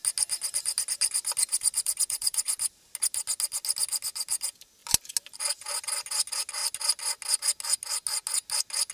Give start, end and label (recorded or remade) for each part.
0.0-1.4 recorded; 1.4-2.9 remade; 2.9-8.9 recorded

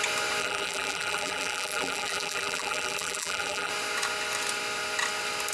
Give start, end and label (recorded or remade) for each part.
0.0-0.4 recorded; 0.4-3.7 remade; 3.7-5.5 recorded